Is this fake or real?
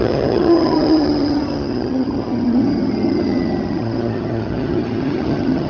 fake